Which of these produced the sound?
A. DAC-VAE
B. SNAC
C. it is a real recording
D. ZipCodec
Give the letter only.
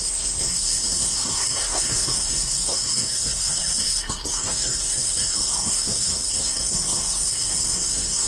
B